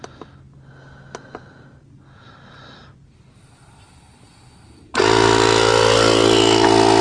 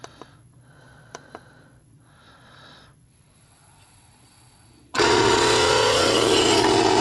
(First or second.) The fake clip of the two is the second